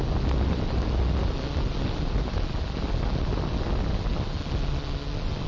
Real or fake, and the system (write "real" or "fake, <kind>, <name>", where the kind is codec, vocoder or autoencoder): real